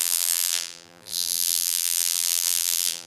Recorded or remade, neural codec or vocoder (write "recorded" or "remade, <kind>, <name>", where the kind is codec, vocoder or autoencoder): remade, vocoder, BigVGAN v2